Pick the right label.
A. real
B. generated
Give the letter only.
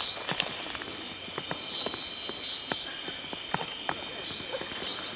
A